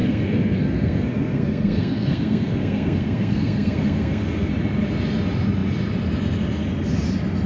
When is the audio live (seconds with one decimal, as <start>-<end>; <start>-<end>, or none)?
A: 4.5-7.5